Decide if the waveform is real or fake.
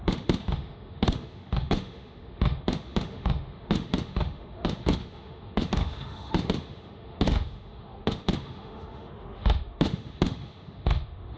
fake